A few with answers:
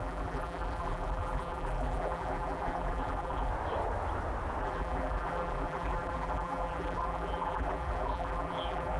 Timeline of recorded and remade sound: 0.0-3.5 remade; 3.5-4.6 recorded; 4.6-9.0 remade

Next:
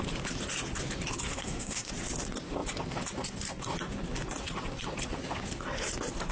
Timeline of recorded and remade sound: 0.0-1.3 recorded; 1.3-1.9 remade; 1.9-6.3 recorded

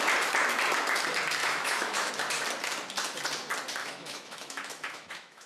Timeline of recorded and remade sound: 0.0-1.4 recorded; 1.4-2.1 remade; 2.1-3.8 recorded; 3.8-5.5 remade

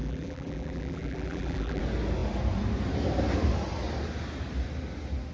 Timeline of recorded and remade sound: 0.0-1.8 remade; 1.8-5.3 recorded